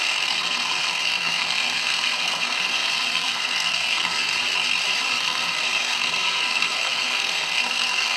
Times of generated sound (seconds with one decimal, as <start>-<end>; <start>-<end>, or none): 0.0-4.3; 5.2-8.2